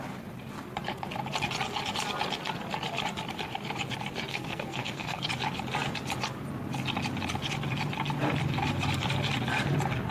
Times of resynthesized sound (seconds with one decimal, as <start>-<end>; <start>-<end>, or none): 4.3-5.3